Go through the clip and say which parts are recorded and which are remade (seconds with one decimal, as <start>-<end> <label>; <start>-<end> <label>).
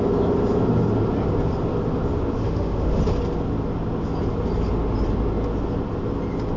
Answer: 0.0-2.4 recorded; 2.4-3.0 remade; 3.0-6.6 recorded